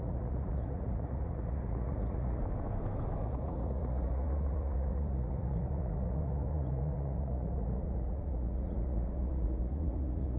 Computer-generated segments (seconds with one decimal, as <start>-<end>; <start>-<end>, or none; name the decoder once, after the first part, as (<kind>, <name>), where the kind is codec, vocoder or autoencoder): 0.0-2.4 (vocoder, Vocos); 3.2-10.4